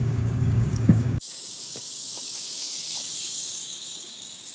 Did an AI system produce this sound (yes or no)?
yes